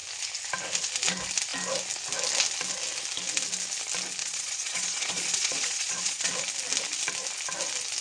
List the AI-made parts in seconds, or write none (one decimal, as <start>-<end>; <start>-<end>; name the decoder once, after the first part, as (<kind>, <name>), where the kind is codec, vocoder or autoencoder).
4.2-6.3 (vocoder, Vocos)